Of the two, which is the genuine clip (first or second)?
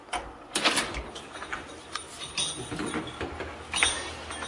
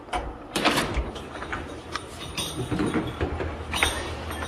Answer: first